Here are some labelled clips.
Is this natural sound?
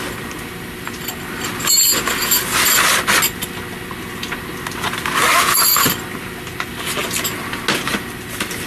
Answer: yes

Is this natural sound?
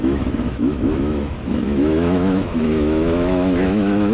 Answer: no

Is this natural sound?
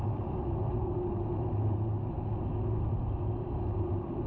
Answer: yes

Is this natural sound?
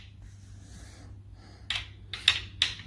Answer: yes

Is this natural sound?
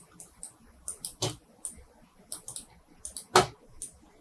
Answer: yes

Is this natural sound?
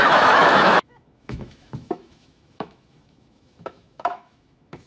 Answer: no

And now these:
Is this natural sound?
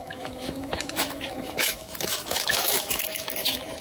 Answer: no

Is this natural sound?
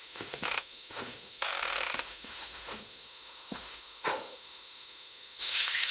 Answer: no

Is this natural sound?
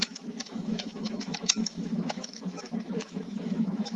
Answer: no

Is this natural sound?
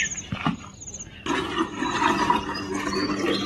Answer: yes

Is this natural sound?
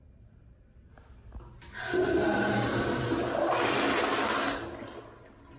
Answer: yes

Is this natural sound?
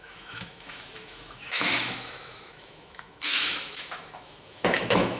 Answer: no